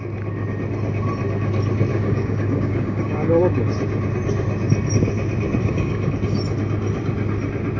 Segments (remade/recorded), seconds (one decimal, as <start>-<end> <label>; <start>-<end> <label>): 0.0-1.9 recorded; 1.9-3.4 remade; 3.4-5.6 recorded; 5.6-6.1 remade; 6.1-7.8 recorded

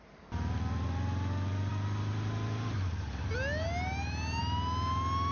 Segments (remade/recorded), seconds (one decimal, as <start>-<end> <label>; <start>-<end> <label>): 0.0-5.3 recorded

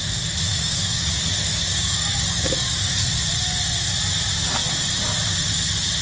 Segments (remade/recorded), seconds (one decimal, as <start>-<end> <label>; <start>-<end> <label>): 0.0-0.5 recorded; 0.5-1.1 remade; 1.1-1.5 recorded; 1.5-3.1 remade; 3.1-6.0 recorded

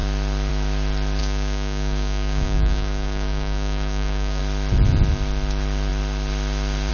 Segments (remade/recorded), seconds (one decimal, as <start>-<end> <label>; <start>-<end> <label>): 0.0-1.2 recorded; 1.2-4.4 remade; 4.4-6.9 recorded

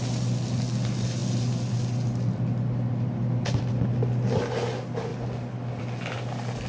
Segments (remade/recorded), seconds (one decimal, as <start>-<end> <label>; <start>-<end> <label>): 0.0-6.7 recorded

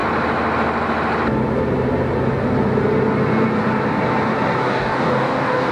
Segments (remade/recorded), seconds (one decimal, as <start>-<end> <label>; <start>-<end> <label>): 0.0-4.6 recorded; 4.6-5.7 remade

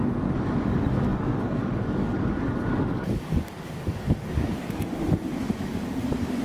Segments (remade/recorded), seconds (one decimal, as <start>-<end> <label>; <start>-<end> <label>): 0.0-5.0 remade; 5.0-5.6 recorded; 5.6-6.4 remade

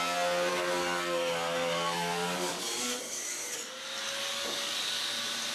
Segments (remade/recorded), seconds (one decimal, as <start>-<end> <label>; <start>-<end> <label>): 0.0-0.5 recorded; 0.5-3.8 remade; 3.8-4.3 recorded; 4.3-5.0 remade; 5.0-5.5 recorded